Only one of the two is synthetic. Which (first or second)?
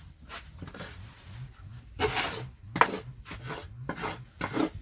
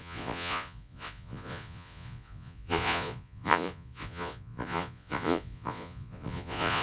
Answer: second